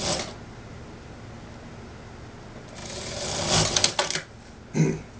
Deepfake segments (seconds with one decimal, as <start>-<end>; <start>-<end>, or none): none